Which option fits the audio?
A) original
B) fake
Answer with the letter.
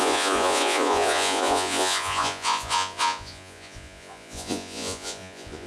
B